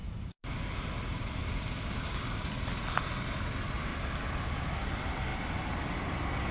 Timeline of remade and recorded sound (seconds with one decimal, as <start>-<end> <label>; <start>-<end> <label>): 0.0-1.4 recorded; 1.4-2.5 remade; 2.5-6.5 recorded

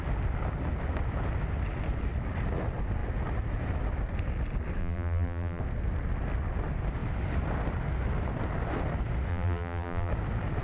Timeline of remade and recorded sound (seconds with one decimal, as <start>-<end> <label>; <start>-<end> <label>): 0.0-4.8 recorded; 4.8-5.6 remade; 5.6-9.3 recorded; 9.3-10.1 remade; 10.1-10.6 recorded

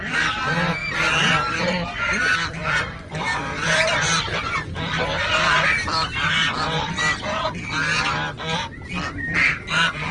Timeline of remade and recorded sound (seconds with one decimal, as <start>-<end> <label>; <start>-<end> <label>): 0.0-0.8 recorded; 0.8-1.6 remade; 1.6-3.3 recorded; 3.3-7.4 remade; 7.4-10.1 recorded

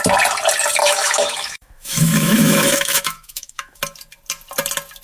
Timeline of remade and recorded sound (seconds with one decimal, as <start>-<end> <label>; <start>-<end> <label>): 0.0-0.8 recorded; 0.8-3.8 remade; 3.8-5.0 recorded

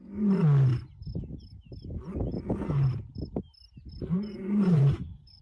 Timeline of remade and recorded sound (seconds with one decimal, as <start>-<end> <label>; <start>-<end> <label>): 0.0-4.3 recorded; 4.3-5.4 remade

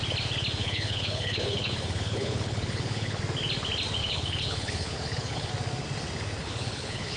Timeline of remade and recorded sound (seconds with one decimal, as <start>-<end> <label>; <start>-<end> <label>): 0.0-0.6 recorded; 0.6-3.2 remade; 3.2-4.0 recorded; 4.0-5.5 remade; 5.5-6.4 recorded; 6.4-7.2 remade

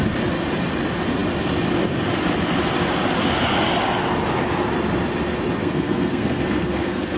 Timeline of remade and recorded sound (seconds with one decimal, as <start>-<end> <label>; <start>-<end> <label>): 0.0-5.6 recorded; 5.6-7.2 remade

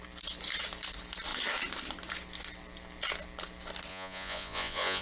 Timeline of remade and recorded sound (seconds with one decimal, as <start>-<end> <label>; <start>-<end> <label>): 0.0-3.9 recorded; 3.9-5.0 remade